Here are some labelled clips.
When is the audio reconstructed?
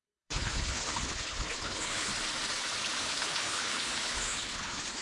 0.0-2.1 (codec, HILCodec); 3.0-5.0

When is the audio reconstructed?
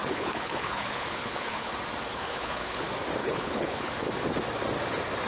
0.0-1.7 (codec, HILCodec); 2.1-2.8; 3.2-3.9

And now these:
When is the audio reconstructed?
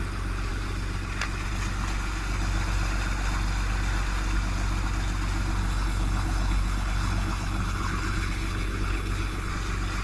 5.6-9.5 (codec, HILCodec)